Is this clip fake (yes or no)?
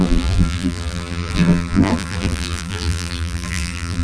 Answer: yes